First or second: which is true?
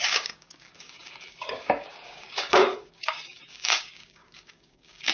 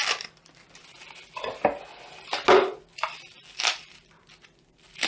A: second